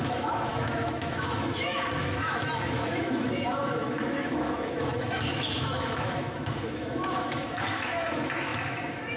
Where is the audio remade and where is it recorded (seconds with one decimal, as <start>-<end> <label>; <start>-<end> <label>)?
0.0-9.2 remade